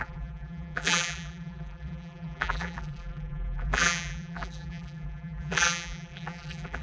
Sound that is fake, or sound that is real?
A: fake